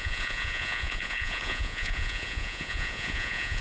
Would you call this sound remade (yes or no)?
yes